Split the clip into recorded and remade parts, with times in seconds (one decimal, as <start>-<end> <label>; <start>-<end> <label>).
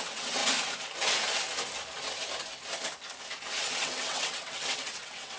0.0-0.4 remade; 0.4-3.6 recorded; 3.6-5.4 remade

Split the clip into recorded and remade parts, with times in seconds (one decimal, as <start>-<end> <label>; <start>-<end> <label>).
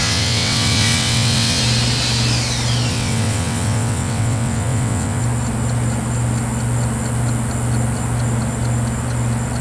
0.0-1.6 remade; 1.6-2.9 recorded; 2.9-5.2 remade; 5.2-9.6 recorded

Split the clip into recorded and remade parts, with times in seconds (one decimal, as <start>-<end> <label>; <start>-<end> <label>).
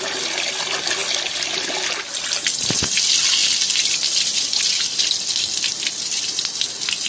0.0-7.1 recorded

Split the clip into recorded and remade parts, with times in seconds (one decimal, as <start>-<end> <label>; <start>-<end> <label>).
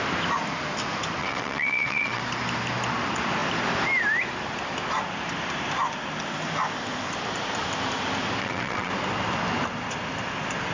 0.0-1.2 recorded; 1.2-2.2 remade; 2.2-8.4 recorded; 8.4-8.9 remade; 8.9-10.7 recorded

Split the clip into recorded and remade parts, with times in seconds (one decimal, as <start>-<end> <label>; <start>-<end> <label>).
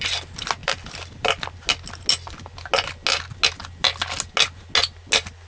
0.0-5.5 recorded